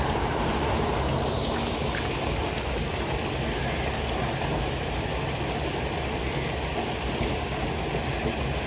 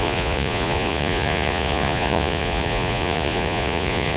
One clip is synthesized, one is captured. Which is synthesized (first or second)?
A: second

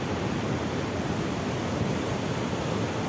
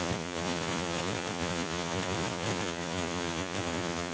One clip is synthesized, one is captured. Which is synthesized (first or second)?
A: second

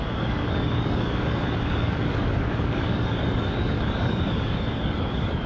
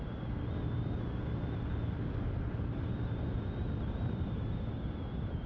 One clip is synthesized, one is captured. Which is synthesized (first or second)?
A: first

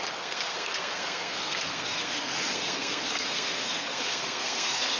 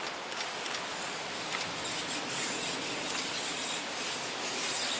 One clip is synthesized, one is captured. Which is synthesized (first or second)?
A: first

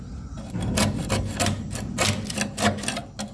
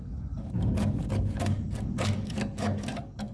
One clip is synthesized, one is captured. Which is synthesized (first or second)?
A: second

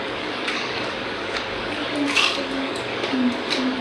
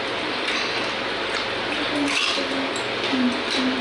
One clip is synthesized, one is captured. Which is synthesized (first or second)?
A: first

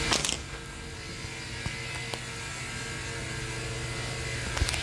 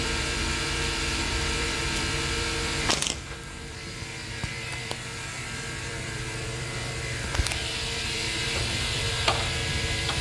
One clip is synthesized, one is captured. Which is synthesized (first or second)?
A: second